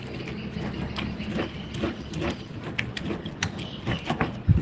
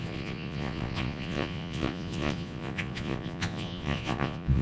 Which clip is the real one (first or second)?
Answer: first